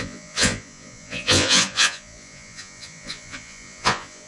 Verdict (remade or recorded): remade